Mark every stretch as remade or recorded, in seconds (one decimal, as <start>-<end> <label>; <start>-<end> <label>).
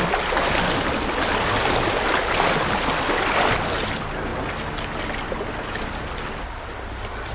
0.0-7.3 recorded